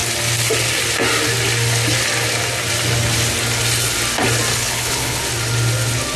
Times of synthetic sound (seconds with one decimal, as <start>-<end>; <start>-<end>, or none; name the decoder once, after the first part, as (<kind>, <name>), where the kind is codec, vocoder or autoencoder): 4.5-5.2 (codec, HILCodec)